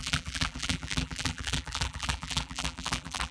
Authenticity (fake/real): fake